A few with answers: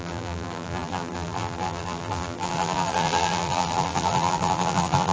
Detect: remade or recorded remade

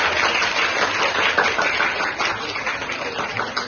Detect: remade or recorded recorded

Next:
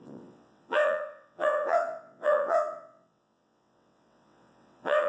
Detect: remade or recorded remade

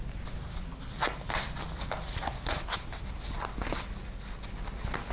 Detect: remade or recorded recorded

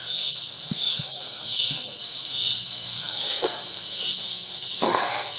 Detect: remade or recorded remade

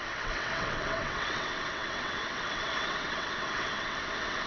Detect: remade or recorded remade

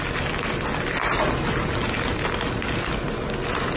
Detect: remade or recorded recorded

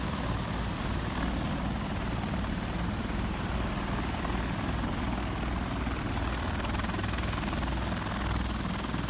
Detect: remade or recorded recorded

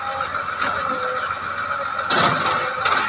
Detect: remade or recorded recorded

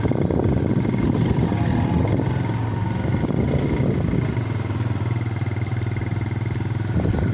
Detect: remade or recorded recorded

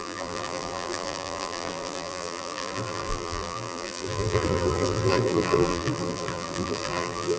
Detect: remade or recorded remade